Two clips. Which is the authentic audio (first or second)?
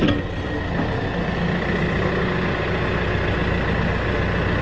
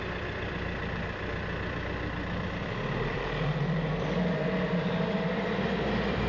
first